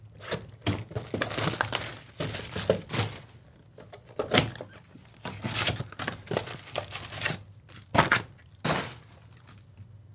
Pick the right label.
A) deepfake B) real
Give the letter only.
B